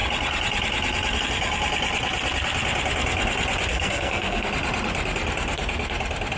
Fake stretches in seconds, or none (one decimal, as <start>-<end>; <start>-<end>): 3.7-4.5